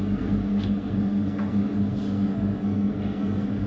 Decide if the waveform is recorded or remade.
remade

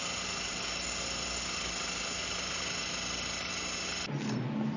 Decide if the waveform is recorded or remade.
recorded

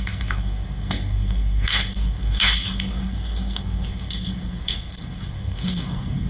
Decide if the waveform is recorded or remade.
remade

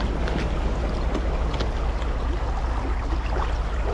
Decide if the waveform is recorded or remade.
recorded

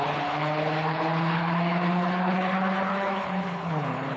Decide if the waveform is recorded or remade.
remade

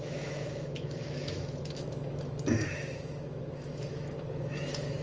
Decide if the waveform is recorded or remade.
remade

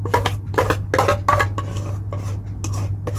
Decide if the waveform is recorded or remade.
recorded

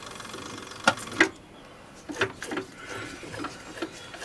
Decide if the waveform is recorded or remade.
recorded